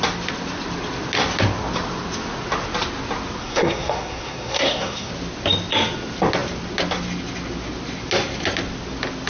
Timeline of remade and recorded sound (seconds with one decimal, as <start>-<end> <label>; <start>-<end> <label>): 0.0-3.4 recorded; 3.4-5.1 remade; 5.1-9.3 recorded